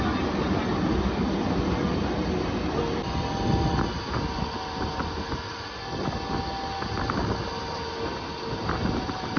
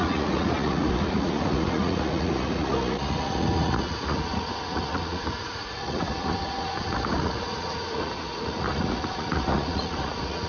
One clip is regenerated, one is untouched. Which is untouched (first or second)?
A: first